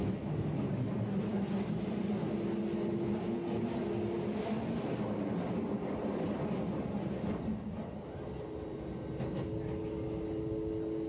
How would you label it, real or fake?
real